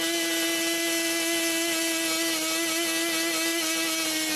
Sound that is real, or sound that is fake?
real